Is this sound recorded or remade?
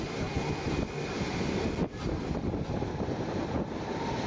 recorded